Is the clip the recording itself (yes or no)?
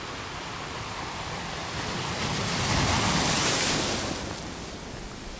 yes